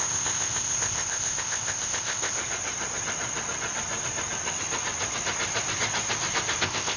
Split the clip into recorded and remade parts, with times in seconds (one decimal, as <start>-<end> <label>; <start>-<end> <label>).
0.0-2.4 remade; 2.4-6.6 recorded; 6.6-7.0 remade